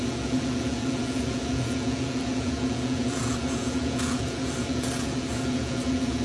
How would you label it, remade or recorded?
remade